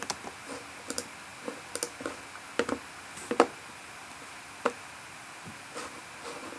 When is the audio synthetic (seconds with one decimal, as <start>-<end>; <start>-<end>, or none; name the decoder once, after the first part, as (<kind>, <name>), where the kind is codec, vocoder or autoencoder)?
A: none